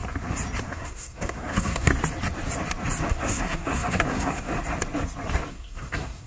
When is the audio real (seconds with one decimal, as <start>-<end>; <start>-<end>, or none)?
0.0-0.6; 1.9-3.1; 4.5-5.5